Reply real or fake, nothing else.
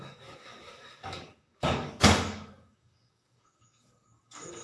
fake